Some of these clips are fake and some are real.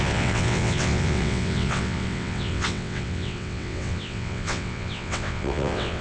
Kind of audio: fake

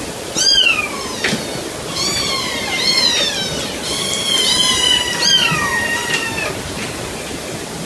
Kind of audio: real